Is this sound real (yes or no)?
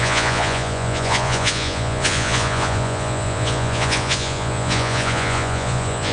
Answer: no